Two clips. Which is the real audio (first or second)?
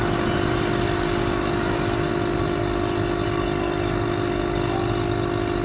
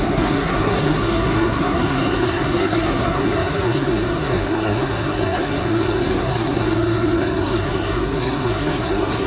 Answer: first